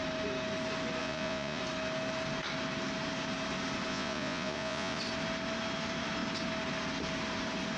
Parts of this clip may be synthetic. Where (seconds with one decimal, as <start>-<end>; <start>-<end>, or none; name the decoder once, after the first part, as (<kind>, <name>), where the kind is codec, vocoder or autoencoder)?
1.0-1.6 (vocoder, Vocos); 3.9-5.0